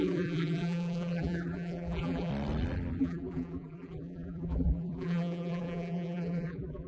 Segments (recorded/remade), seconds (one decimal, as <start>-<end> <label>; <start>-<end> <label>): 0.0-2.3 remade; 2.3-3.0 recorded; 3.0-6.9 remade